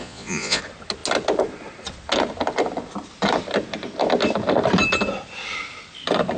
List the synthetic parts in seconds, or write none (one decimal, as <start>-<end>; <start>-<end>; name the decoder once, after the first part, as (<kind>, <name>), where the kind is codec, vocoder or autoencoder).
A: 0.0-0.6 (vocoder, Vocos)